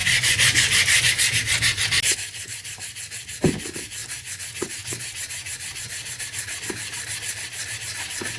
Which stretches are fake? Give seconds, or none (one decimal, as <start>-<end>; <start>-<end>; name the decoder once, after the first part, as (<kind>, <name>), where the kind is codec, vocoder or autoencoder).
0.0-1.2 (vocoder, Vocos); 4.0-6.2